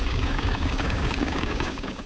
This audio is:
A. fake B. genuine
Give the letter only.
A